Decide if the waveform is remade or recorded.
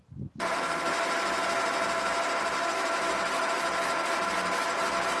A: recorded